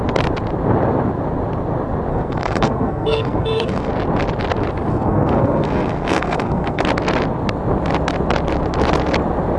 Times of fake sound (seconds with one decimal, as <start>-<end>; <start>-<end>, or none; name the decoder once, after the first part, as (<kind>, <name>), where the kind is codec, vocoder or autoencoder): 2.1-3.9 (codec, SNAC); 4.9-6.8